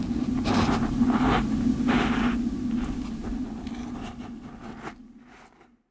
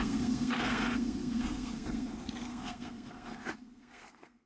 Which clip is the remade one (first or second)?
second